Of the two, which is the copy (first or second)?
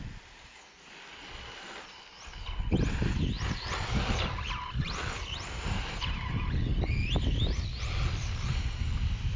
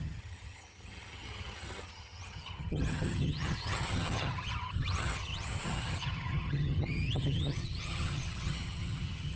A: second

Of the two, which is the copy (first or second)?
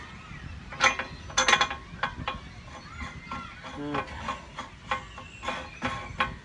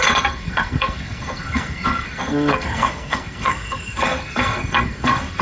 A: second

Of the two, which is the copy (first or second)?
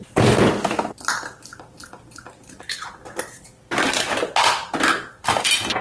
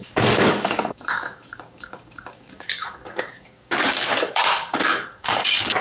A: second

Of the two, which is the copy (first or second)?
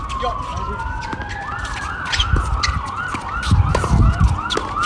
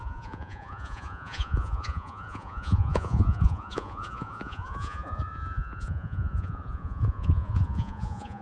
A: second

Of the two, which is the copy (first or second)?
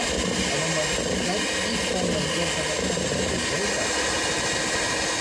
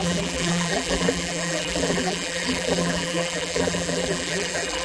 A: second